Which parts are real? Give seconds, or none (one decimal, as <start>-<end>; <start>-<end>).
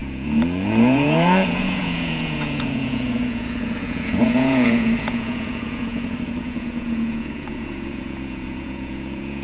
none